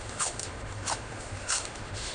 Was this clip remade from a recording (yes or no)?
yes